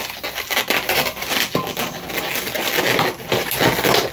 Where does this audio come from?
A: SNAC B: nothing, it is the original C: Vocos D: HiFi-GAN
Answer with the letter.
B